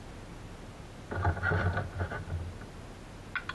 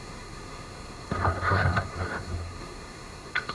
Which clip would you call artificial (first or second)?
second